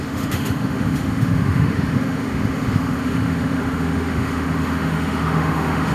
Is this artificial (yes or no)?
yes